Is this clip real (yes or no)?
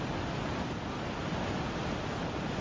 yes